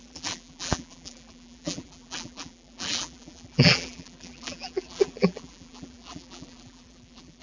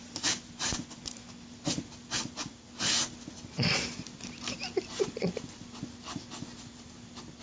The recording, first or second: second